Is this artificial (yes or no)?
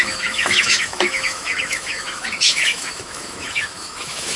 yes